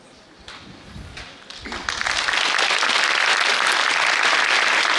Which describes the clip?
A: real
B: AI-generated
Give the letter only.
A